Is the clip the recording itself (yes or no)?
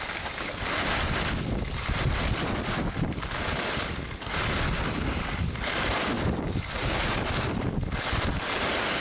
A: yes